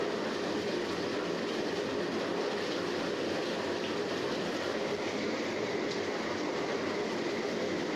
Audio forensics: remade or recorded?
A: recorded